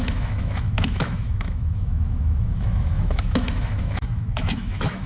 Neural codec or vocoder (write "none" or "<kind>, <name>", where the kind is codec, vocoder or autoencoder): autoencoder, DAC-VAE